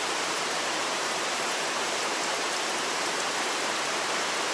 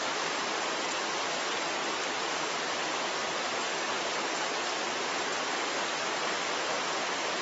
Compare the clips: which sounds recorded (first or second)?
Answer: second